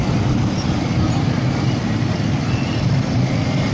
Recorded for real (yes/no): yes